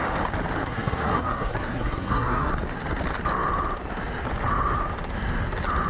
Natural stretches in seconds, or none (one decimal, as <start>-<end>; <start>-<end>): 0.0-0.6; 2.5-5.9